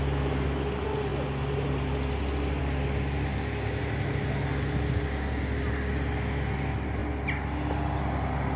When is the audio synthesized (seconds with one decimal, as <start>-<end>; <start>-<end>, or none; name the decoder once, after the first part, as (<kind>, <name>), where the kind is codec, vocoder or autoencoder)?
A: none